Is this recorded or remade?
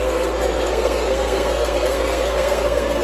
remade